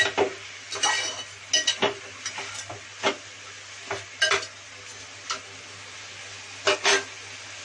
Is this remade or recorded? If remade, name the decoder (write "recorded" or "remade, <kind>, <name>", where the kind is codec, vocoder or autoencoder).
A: recorded